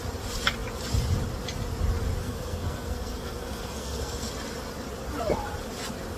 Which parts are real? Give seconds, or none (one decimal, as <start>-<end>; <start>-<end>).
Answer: 0.0-2.2; 4.3-6.2